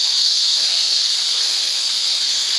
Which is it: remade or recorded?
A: remade